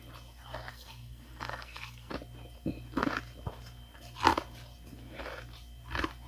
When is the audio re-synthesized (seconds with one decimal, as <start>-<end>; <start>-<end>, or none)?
0.7-2.1

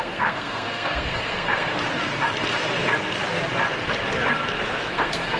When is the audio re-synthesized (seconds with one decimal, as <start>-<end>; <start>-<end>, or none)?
0.0-1.7; 4.9-5.4

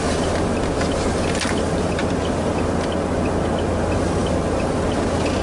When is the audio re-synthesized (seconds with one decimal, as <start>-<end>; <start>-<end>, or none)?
none

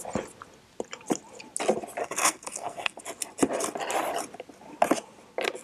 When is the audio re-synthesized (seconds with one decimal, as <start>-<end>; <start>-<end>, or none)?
2.0-3.0

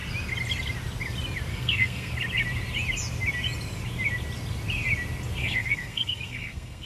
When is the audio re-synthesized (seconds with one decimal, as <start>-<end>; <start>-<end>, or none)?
1.5-2.1; 5.4-6.9

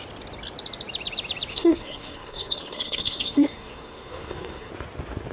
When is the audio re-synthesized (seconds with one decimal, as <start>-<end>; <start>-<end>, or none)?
1.5-4.7